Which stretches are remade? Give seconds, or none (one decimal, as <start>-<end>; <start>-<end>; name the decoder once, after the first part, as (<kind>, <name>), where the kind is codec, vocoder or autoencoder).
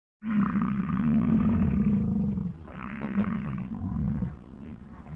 0.5-1.3 (vocoder, WaveNeXt); 2.4-5.2